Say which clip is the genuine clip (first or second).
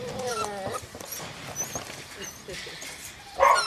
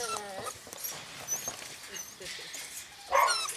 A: second